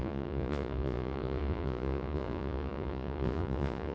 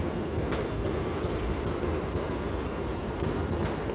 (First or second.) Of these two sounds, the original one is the second